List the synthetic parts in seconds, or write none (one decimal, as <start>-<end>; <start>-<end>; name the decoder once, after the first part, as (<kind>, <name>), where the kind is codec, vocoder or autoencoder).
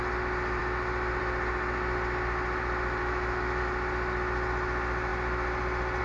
3.0-3.6 (autoencoder, DAC-VAE)